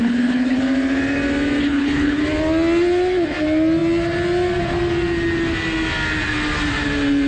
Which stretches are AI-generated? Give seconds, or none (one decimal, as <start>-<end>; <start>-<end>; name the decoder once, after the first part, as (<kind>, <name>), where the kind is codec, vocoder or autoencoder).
0.0-0.6 (codec, HILCodec); 1.6-2.2